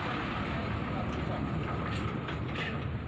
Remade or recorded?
recorded